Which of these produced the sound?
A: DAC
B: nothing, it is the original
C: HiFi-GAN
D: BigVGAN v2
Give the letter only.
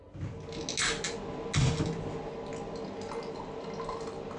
B